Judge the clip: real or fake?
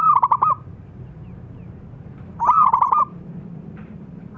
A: fake